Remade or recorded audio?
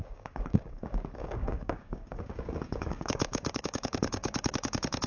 remade